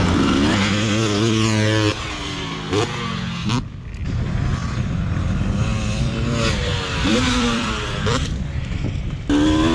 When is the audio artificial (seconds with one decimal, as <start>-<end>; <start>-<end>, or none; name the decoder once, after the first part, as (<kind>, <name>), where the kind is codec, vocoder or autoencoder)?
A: 4.6-6.0 (vocoder, BigVGAN v2); 7.1-8.9